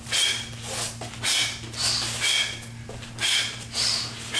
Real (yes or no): yes